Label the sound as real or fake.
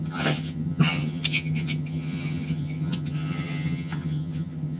fake